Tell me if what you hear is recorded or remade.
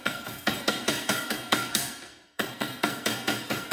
remade